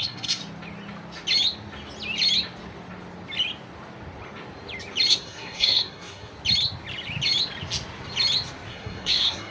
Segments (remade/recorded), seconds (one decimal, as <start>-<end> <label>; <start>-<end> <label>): 0.0-0.4 remade; 0.4-5.1 recorded; 5.1-6.3 remade; 6.3-8.7 recorded; 8.7-9.5 remade